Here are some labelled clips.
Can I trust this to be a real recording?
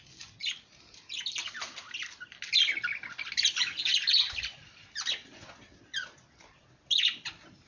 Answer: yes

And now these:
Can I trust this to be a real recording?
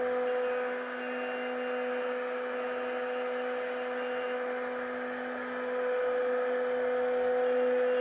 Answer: yes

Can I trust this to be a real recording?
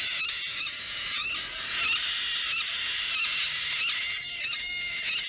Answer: yes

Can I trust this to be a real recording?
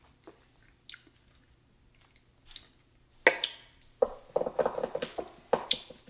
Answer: yes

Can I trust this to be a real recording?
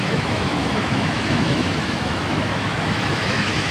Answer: no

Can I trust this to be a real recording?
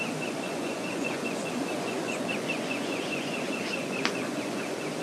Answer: no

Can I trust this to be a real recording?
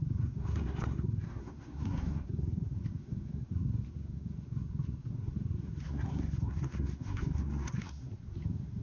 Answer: no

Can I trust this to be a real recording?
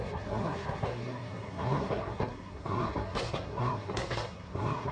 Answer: no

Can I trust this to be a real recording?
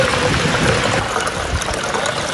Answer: yes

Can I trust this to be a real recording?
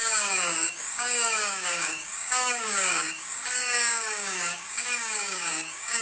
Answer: no